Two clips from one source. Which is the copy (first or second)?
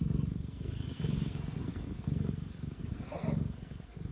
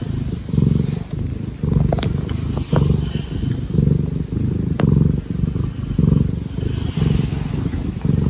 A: first